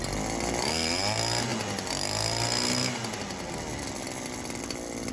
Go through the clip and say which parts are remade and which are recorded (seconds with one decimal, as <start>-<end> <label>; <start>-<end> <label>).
0.0-5.1 recorded